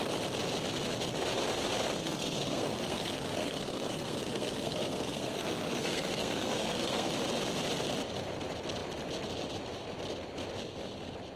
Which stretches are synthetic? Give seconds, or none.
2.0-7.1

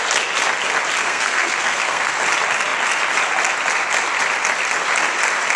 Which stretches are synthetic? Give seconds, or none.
1.0-2.1

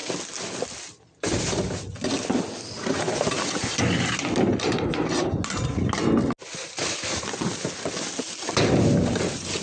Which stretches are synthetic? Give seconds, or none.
none